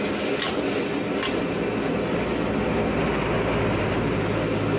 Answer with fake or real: real